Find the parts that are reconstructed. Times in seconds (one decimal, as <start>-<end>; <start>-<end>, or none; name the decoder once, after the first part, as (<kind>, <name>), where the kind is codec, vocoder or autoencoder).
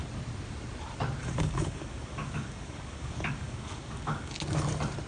1.2-4.3 (codec, DAC)